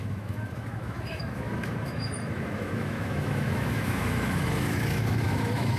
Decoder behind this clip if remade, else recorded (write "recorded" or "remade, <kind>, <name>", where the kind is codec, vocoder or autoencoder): remade, autoencoder, DAC-VAE